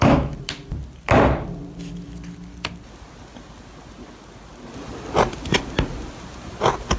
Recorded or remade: recorded